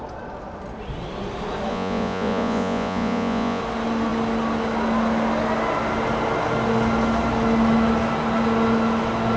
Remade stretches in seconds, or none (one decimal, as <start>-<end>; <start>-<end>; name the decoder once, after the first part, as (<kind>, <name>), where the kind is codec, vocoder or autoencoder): 1.7-3.6 (vocoder, Vocos)